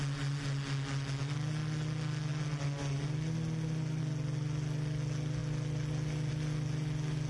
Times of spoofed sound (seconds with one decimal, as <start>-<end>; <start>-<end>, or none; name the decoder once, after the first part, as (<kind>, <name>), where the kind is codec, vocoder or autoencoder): none